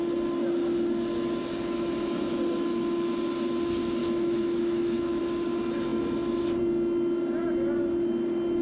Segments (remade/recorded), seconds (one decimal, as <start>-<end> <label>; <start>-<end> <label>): 0.0-4.0 recorded; 4.0-5.2 remade; 5.2-8.6 recorded